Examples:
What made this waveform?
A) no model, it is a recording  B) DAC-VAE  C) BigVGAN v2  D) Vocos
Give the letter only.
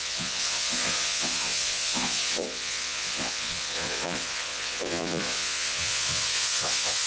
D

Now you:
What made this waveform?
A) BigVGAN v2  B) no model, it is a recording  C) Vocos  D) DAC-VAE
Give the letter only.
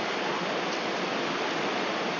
B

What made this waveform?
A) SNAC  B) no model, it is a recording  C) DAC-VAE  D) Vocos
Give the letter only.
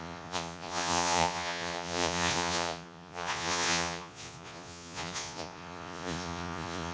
D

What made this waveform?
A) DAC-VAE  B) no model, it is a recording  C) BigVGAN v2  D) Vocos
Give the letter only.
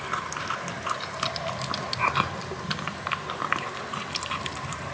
B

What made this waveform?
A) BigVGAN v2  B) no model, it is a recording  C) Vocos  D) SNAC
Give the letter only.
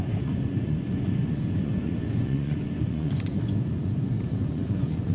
C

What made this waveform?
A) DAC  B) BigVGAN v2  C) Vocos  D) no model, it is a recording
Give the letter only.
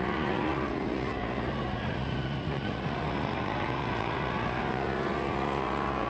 C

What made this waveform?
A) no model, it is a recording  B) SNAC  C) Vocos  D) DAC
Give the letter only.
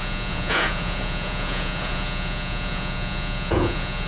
C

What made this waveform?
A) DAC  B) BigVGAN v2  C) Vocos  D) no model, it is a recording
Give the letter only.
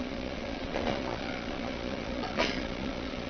C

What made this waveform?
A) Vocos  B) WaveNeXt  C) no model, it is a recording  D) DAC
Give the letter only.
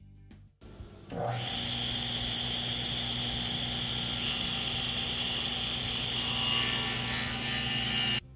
C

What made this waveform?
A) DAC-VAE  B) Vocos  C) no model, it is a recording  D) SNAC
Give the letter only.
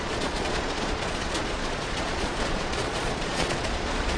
B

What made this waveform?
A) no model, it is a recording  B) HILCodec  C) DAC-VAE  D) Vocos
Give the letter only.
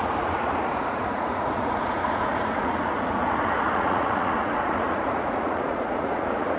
D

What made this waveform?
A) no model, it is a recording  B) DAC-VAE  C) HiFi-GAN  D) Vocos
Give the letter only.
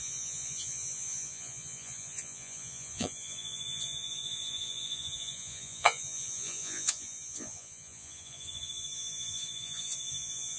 D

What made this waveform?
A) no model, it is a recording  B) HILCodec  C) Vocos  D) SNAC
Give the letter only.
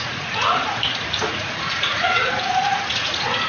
C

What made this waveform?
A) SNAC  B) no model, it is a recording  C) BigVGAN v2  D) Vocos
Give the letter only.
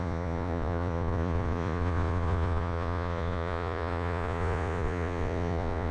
D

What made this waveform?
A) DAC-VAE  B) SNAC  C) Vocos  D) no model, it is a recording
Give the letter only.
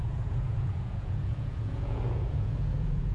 C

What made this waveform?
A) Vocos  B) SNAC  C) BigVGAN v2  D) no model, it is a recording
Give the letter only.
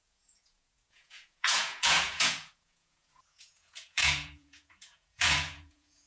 A